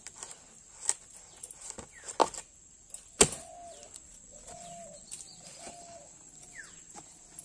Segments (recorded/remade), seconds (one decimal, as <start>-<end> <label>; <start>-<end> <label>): 0.0-7.4 recorded